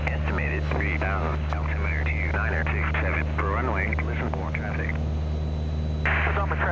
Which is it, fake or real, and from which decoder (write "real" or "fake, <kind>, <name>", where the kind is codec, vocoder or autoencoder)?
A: real